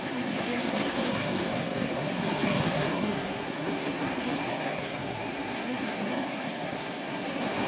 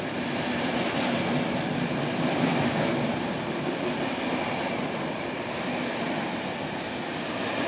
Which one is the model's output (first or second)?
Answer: first